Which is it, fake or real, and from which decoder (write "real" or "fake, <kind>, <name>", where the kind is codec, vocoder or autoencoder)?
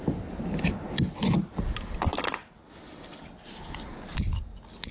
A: real